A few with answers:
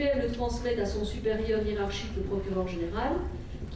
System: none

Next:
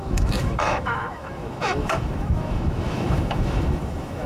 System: autoencoder, DAC-VAE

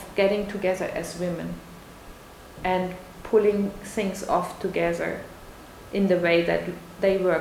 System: none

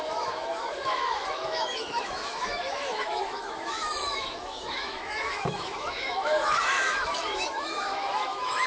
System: autoencoder, DAC-VAE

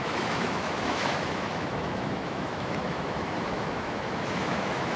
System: autoencoder, DAC-VAE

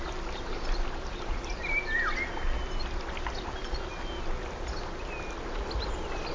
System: none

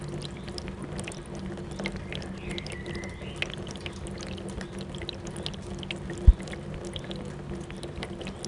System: none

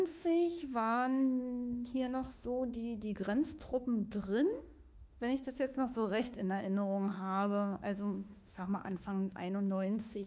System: autoencoder, DAC-VAE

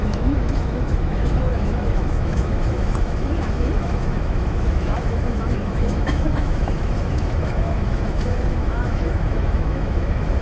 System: autoencoder, DAC-VAE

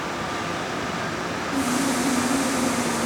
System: none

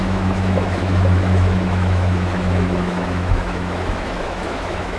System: autoencoder, DAC-VAE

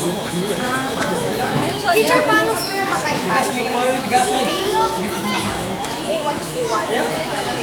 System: autoencoder, DAC-VAE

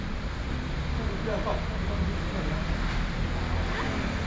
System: none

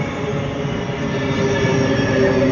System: none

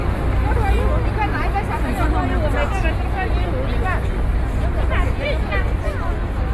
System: none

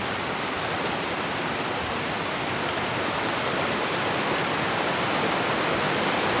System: none